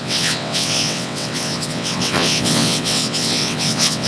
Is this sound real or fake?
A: fake